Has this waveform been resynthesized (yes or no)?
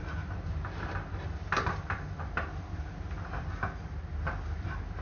no